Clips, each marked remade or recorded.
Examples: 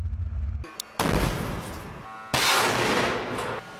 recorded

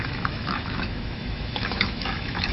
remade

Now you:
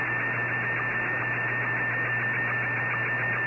recorded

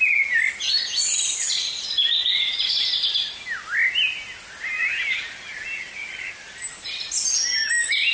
recorded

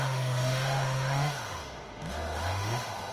remade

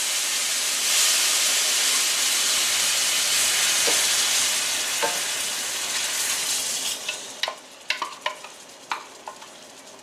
recorded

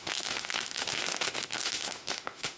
remade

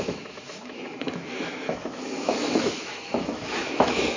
remade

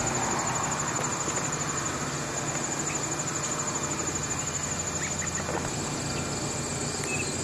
recorded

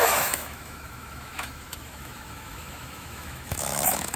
remade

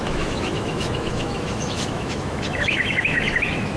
remade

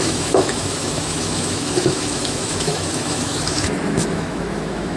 remade